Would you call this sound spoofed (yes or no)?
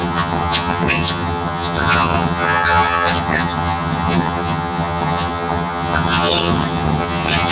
yes